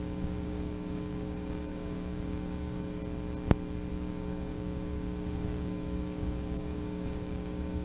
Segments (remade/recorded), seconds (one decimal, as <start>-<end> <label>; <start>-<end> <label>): 0.0-3.0 remade; 3.0-3.9 recorded; 3.9-7.8 remade